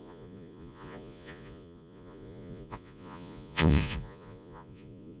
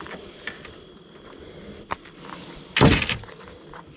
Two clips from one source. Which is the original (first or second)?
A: second